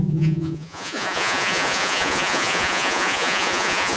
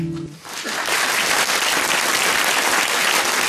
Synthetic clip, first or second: first